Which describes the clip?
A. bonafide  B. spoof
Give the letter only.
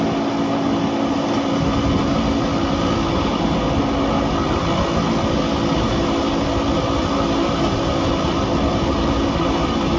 A